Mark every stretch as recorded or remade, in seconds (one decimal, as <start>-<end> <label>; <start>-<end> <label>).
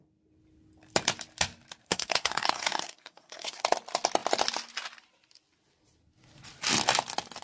0.0-1.8 recorded; 1.8-3.6 remade; 3.6-7.4 recorded